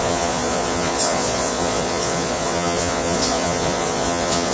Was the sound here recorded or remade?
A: remade